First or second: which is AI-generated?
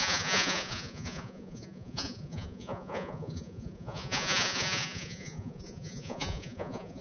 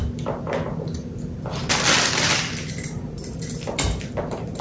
first